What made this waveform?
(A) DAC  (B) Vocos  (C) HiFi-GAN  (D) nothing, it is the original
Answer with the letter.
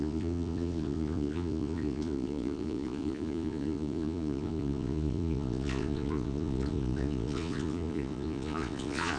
B